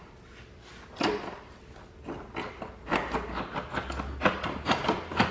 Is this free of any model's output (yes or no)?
yes